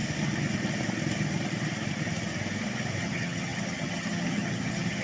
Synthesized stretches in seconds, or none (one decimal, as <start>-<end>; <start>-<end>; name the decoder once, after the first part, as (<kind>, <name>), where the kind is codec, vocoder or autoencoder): 3.0-5.0 (vocoder, HiFi-GAN)